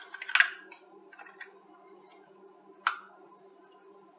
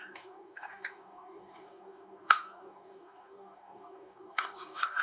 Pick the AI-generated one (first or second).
second